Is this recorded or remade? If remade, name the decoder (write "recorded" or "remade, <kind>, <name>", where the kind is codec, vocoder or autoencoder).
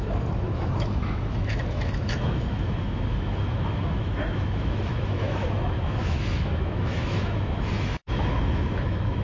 remade, autoencoder, DAC-VAE